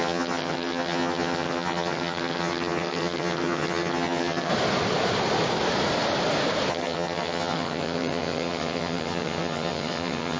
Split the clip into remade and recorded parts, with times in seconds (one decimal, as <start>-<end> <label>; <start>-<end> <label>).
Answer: 0.0-4.5 remade; 4.5-6.7 recorded; 6.7-10.4 remade

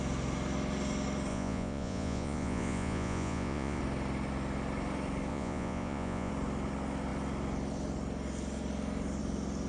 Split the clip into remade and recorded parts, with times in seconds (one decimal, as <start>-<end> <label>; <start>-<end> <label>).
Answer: 0.0-1.3 recorded; 1.3-3.8 remade; 3.8-5.3 recorded; 5.3-6.3 remade; 6.3-9.7 recorded

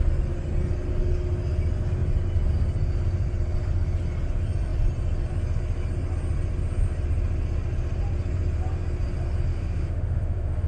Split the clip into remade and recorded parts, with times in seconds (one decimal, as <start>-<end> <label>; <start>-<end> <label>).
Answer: 0.0-9.5 recorded; 9.5-10.7 remade

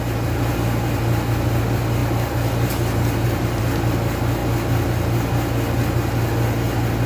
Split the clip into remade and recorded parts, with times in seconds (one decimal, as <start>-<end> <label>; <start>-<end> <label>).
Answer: 0.0-7.1 recorded

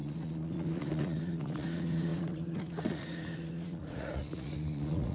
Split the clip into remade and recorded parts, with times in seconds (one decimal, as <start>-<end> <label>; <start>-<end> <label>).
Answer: 0.0-5.1 remade

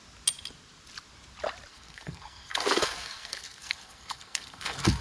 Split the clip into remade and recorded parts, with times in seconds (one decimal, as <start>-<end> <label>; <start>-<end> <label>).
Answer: 0.0-1.7 recorded; 1.7-5.0 remade